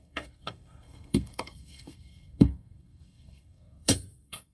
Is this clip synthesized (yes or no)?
yes